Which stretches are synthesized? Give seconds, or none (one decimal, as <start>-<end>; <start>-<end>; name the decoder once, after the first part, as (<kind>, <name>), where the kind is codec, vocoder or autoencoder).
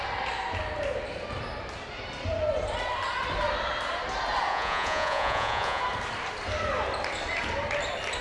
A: 4.5-5.8 (vocoder, Vocos)